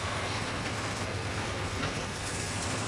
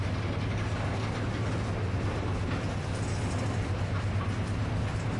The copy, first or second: first